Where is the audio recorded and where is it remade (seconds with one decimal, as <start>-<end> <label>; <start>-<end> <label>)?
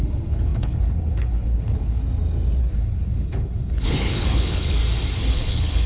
0.0-2.0 remade; 2.0-2.6 recorded; 2.6-4.8 remade; 4.8-5.3 recorded; 5.3-5.9 remade